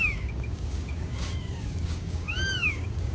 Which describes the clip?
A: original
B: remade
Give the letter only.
B